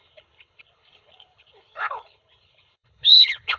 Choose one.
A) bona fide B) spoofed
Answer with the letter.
B